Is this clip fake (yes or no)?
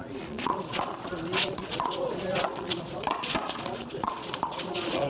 yes